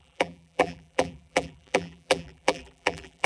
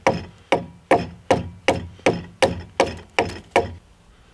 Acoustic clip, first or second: second